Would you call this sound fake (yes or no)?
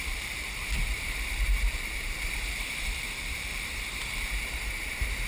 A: yes